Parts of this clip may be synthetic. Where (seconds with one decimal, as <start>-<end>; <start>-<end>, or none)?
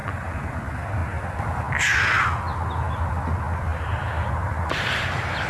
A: 0.0-0.6; 3.7-5.5